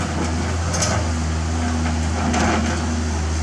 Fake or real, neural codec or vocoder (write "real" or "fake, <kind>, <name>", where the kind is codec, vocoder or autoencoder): real